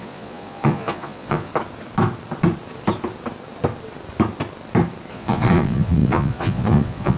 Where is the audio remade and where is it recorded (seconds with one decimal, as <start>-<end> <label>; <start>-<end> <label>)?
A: 0.0-1.5 remade; 1.5-5.1 recorded; 5.1-7.2 remade